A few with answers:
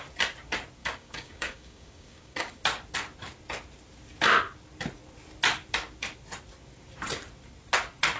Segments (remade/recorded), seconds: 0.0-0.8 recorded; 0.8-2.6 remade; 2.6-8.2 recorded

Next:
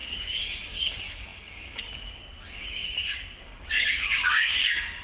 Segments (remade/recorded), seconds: 0.0-5.0 remade